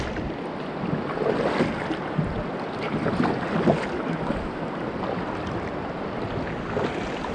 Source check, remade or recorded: recorded